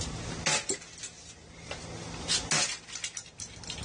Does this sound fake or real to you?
real